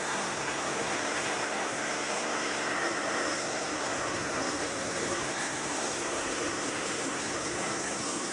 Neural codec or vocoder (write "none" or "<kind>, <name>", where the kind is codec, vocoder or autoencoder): codec, SNAC